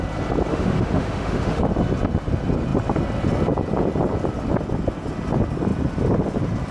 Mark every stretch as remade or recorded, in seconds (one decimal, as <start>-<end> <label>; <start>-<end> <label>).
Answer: 0.0-0.5 recorded; 0.5-1.6 remade; 1.6-6.7 recorded